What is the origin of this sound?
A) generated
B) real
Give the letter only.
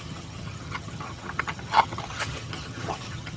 A